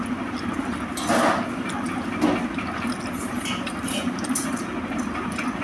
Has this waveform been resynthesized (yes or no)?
no